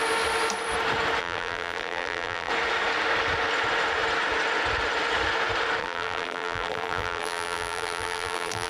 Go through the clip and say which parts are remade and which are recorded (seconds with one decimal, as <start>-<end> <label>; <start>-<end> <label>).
0.0-1.2 recorded; 1.2-2.5 remade; 2.5-5.8 recorded; 5.8-8.7 remade